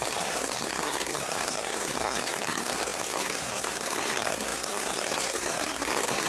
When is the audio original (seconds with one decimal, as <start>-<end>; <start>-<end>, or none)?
none